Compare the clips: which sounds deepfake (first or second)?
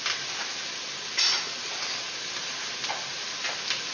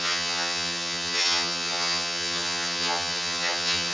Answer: second